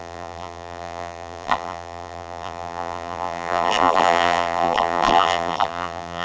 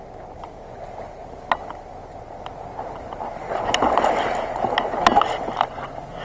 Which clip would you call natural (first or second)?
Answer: second